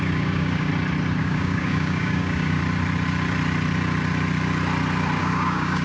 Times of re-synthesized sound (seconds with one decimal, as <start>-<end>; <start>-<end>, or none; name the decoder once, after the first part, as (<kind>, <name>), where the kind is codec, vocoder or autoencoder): 0.0-0.7 (codec, DAC); 1.2-2.6; 5.2-5.8